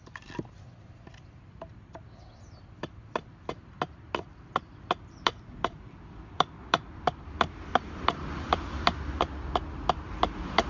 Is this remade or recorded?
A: remade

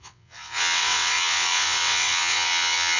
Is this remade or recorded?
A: remade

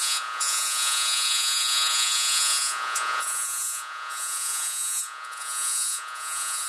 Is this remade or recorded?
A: remade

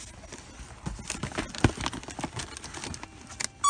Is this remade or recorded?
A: recorded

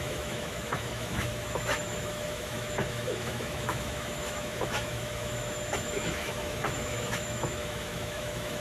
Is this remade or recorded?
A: remade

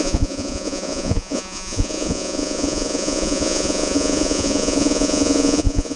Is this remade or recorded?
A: remade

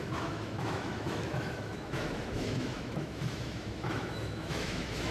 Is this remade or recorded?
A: remade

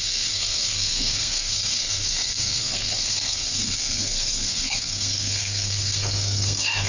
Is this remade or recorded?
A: remade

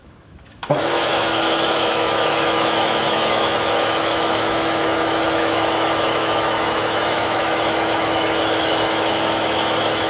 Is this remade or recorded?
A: remade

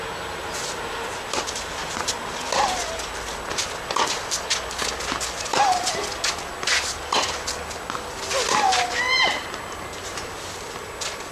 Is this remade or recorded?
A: recorded